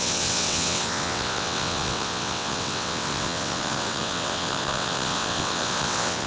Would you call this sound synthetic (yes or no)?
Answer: yes